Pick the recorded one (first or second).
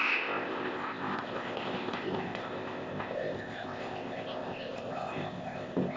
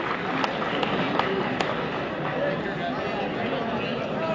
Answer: second